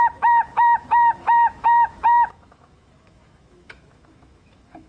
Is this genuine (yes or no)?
no